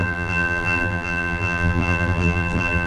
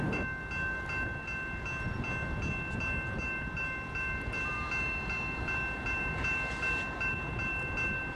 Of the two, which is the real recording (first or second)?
second